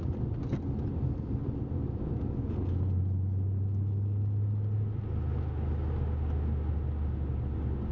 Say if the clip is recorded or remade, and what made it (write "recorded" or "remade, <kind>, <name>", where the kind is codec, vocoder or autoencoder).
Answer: recorded